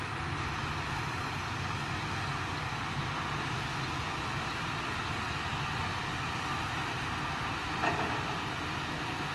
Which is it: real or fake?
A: real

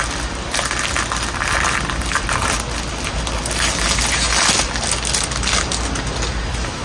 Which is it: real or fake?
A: real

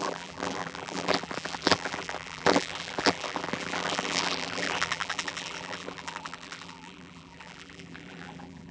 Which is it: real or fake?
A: fake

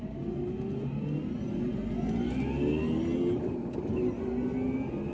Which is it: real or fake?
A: real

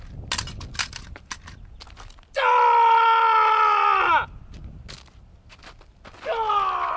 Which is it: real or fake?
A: real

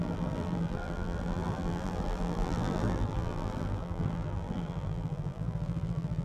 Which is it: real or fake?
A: fake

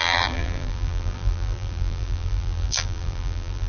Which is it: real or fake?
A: fake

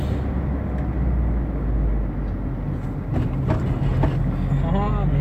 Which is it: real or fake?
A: real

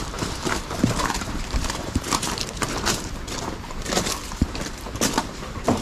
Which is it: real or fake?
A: fake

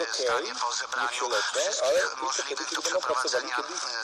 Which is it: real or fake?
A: real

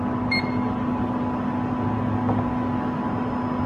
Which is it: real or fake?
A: real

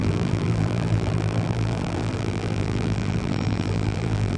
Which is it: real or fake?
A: fake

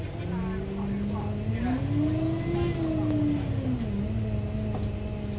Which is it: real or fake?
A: real